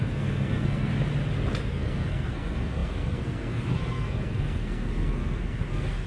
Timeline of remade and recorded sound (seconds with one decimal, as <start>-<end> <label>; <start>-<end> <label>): 0.0-0.9 remade; 0.9-1.7 recorded; 1.7-6.1 remade